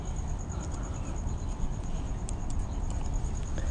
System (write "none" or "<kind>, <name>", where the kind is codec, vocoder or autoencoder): none